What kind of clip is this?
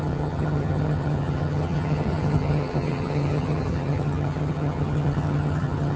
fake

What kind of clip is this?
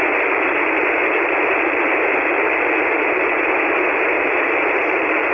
fake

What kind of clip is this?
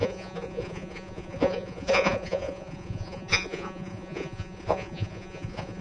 fake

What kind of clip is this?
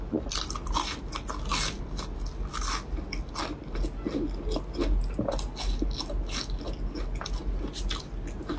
real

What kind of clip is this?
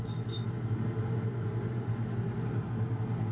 real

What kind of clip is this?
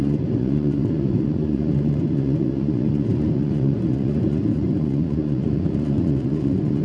fake